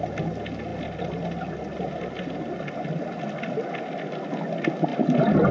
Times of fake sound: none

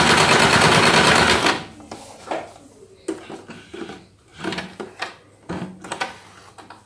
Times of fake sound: none

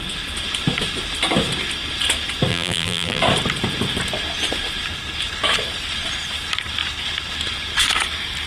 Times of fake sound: 2.5-3.2 (vocoder, BigVGAN v2)

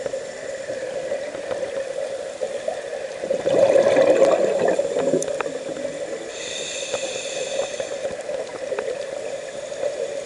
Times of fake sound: none